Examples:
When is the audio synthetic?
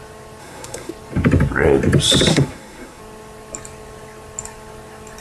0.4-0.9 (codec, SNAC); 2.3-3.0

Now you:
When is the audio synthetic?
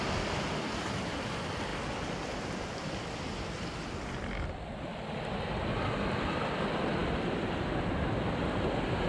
none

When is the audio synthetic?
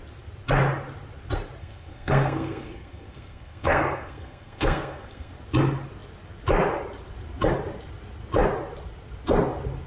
1.6-5.3 (codec, SNAC)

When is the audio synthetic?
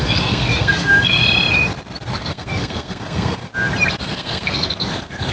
0.0-1.2 (codec, SNAC); 2.1-3.5; 4.0-5.3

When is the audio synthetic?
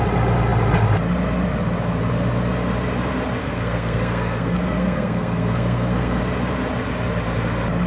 3.4-6.2 (codec, SNAC)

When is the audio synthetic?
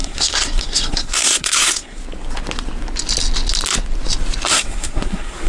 0.0-2.0 (codec, SNAC); 4.5-5.5